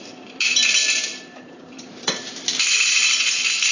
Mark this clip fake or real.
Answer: fake